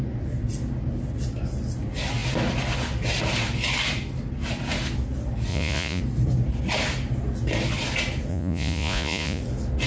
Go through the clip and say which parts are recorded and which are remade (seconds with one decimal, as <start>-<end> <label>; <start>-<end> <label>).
0.0-5.5 recorded; 5.5-6.0 remade; 6.0-8.3 recorded; 8.3-9.4 remade; 9.4-9.9 recorded